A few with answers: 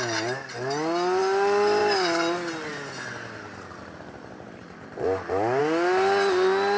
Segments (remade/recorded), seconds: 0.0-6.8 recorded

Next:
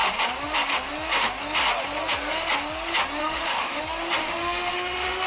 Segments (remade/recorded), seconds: 0.0-3.2 recorded; 3.2-3.8 remade; 3.8-4.2 recorded; 4.2-5.3 remade

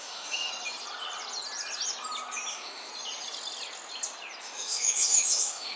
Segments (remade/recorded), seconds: 0.0-0.5 remade; 0.5-2.5 recorded; 2.5-2.9 remade; 2.9-4.4 recorded; 4.4-5.8 remade

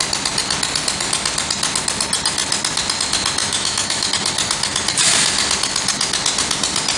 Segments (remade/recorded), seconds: 0.0-3.4 recorded; 3.4-4.1 remade; 4.1-7.0 recorded

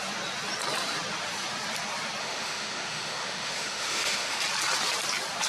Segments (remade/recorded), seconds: 0.0-2.2 recorded; 2.2-4.4 remade; 4.4-5.5 recorded

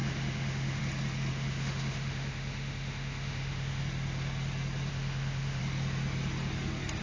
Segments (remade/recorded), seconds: 0.0-0.8 remade; 0.8-1.3 recorded; 1.3-3.8 remade; 3.8-4.9 recorded; 4.9-5.6 remade; 5.6-7.0 recorded

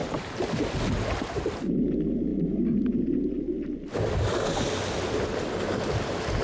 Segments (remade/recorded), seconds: 0.0-6.4 recorded

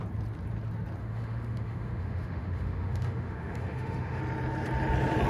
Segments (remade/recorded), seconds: 0.0-1.0 recorded; 1.0-4.2 remade; 4.2-5.3 recorded